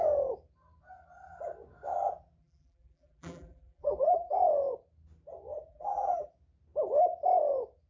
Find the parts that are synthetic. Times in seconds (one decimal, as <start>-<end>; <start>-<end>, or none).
2.4-4.4; 5.7-6.3